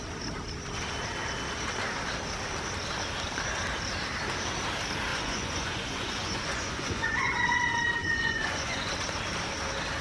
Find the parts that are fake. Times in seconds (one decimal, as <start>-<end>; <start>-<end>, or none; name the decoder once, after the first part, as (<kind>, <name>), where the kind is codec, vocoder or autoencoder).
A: 5.1-7.6 (vocoder, Vocos); 8.0-8.9